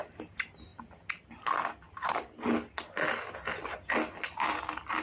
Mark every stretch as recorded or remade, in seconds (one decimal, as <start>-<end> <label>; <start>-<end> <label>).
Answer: 0.0-5.0 recorded